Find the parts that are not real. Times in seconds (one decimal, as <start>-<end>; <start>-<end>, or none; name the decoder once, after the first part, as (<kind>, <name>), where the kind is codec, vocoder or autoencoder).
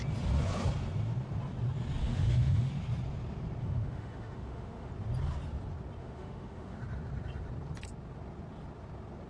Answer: 2.0-2.7 (autoencoder, DAC-VAE); 3.6-4.9; 6.0-6.8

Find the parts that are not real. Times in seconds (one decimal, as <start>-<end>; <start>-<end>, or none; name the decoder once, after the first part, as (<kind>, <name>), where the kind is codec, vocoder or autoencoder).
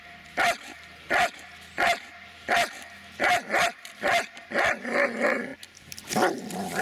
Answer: none